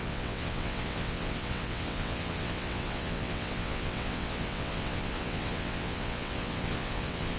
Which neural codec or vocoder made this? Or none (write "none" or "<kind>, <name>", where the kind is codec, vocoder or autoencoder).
vocoder, WaveNeXt